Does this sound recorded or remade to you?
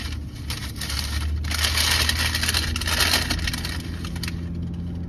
recorded